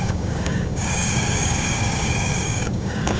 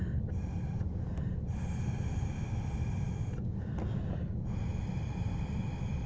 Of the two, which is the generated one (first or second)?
first